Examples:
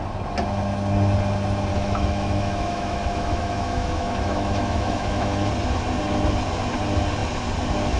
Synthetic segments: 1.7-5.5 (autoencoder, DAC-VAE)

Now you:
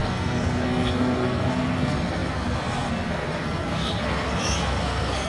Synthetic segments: 0.0-5.3 (codec, SNAC)